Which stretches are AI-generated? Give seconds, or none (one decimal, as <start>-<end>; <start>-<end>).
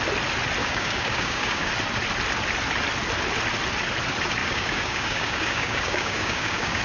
0.6-1.7; 4.4-6.8